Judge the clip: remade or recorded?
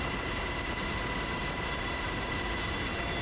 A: remade